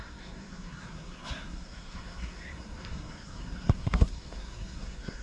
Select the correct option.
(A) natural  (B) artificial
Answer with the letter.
B